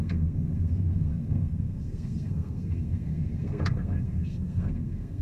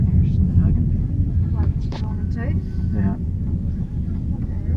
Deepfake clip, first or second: first